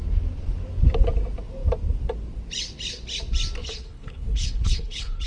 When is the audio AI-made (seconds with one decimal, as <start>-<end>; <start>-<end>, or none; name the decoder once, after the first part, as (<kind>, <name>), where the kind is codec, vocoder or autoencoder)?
3.6-5.3 (codec, HILCodec)

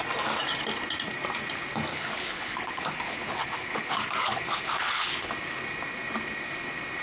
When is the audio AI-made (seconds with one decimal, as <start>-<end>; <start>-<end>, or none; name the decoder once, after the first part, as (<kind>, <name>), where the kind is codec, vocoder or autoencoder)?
1.9-5.3 (codec, HILCodec)

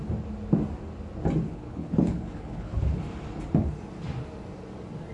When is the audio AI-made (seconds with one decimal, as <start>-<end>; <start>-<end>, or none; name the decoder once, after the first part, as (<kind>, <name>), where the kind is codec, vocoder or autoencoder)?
1.5-3.0 (codec, HILCodec)